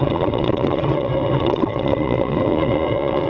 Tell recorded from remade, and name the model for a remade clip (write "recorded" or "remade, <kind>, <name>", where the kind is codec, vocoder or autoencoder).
remade, vocoder, Vocos